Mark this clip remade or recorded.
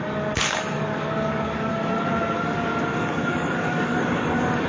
remade